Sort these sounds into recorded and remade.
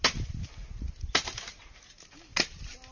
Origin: recorded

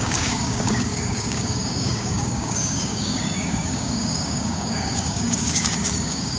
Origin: remade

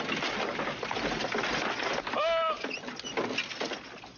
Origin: recorded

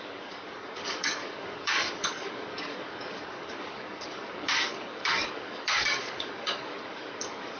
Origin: remade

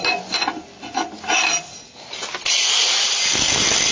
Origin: recorded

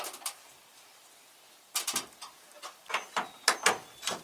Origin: recorded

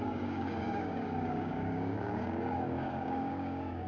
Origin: remade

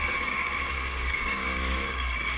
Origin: remade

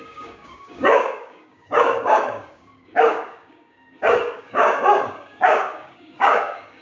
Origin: remade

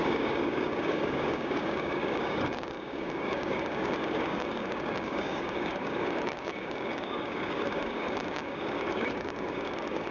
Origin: remade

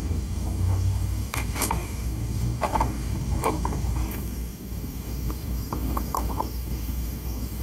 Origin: remade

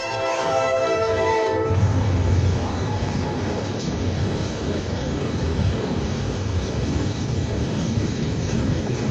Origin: remade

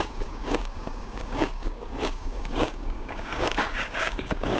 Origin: remade